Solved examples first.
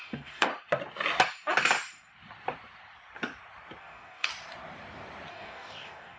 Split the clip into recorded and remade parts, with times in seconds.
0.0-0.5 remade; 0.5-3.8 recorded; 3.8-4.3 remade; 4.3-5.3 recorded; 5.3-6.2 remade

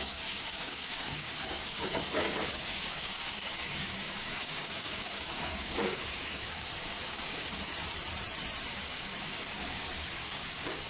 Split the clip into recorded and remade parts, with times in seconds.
0.0-7.7 remade; 7.7-8.7 recorded; 8.7-10.9 remade